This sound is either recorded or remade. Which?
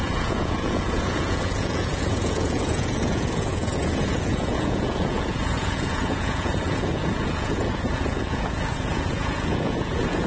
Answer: remade